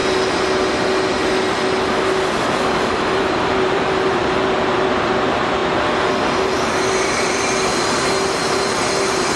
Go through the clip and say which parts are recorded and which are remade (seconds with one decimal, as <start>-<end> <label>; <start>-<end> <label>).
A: 0.0-3.0 recorded; 3.0-5.6 remade; 5.6-6.4 recorded; 6.4-7.7 remade; 7.7-8.6 recorded; 8.6-9.4 remade